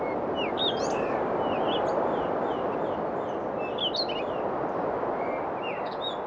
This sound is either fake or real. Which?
real